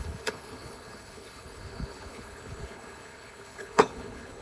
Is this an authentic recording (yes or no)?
no